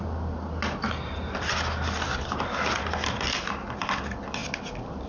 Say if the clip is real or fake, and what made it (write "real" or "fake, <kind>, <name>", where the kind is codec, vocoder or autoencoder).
real